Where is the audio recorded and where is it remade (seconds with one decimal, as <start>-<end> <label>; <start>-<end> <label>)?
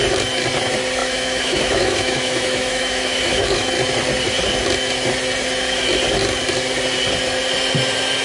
0.0-1.0 recorded; 1.0-3.7 remade; 3.7-8.2 recorded